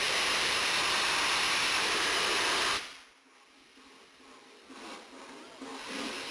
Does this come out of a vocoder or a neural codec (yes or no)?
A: no